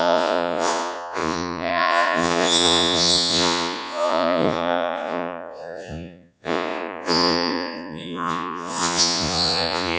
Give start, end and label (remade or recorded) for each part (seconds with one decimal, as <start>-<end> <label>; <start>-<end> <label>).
0.0-10.0 remade

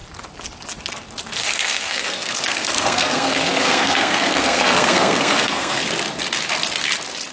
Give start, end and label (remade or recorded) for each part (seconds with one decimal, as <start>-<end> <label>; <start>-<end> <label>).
0.0-1.4 recorded; 1.4-5.8 remade; 5.8-7.3 recorded

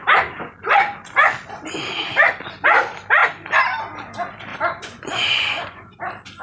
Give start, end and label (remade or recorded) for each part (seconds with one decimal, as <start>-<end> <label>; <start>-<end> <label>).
0.0-4.5 recorded; 4.5-6.0 remade; 6.0-6.4 recorded

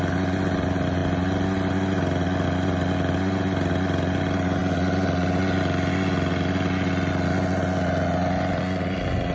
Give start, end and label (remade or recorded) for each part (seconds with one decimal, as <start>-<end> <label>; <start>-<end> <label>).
0.0-9.3 recorded

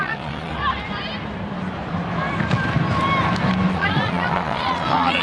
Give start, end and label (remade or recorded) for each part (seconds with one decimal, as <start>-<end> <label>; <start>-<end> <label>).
0.0-0.6 remade; 0.6-3.7 recorded; 3.7-5.2 remade